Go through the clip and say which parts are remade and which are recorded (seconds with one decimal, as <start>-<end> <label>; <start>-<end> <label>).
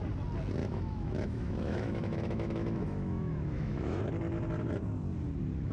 0.0-0.6 recorded; 0.6-4.0 remade; 4.0-5.7 recorded